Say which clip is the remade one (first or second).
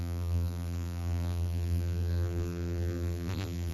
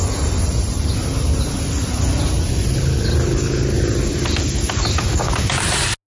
first